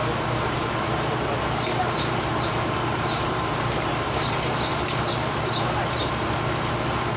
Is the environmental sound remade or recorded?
remade